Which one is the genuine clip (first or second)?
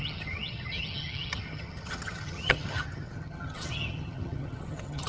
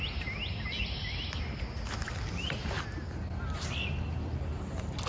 second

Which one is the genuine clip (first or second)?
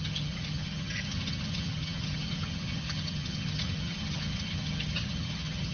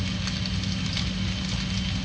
second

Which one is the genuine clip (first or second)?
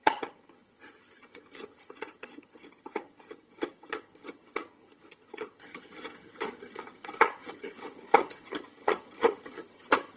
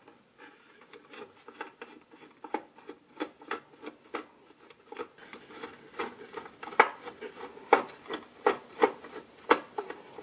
second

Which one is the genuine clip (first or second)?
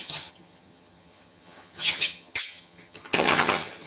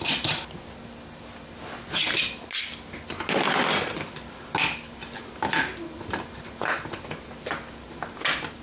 second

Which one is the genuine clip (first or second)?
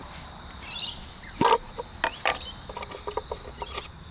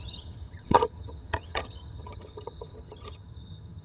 first